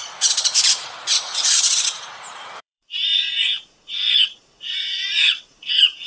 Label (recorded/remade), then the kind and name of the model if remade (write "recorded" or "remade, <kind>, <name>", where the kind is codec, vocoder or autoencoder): remade, vocoder, Vocos